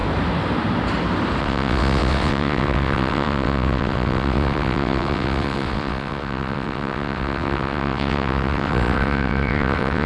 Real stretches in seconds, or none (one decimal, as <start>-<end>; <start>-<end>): 0.0-1.4